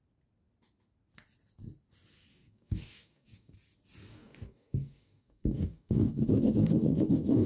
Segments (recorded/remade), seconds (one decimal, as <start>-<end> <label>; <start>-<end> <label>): 0.0-2.3 recorded; 2.3-3.5 remade; 3.5-4.1 recorded; 4.1-7.5 remade